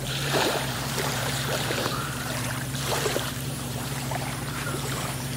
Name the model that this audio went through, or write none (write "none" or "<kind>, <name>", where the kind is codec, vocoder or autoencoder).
vocoder, BigVGAN v2